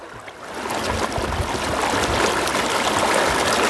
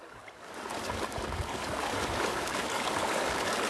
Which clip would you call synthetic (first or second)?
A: second